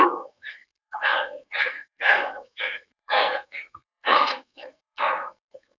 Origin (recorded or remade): remade